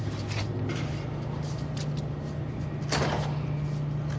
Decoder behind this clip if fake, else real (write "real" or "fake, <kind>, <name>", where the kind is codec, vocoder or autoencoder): real